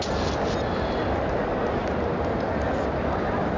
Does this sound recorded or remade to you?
recorded